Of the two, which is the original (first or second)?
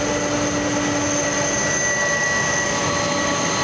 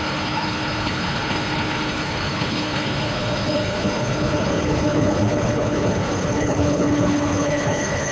first